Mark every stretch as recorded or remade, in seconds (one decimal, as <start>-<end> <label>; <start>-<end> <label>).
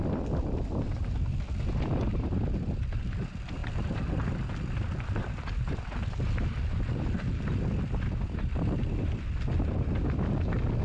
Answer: 0.0-10.8 recorded